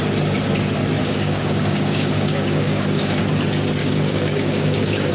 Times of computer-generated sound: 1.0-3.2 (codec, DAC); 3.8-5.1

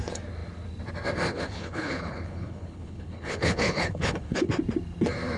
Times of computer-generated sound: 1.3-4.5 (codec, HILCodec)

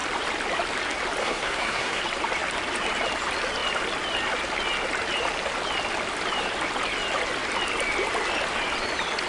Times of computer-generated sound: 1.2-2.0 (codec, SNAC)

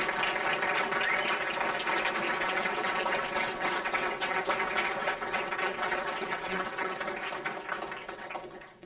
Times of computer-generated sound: 2.3-4.4 (vocoder, WaveNeXt); 5.0-7.0; 8.0-8.9

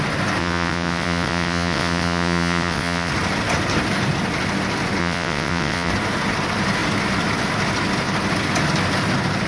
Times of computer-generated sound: 0.4-3.1 (vocoder, WaveNeXt); 5.0-5.9